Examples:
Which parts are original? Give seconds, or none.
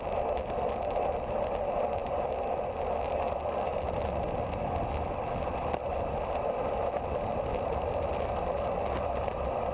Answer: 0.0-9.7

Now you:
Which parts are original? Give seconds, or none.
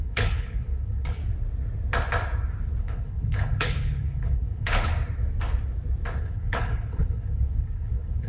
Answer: 1.2-2.8; 4.9-6.2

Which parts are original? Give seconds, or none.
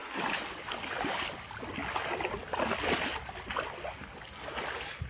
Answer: 0.0-5.1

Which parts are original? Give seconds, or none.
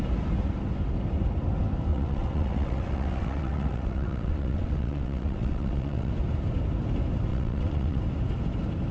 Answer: 0.0-1.9; 6.1-7.3; 8.0-8.9